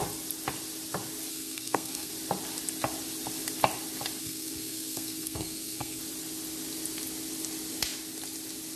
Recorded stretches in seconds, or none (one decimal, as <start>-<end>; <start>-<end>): 0.0-1.3; 2.1-4.2; 6.0-8.8